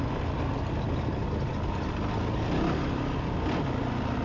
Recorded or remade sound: recorded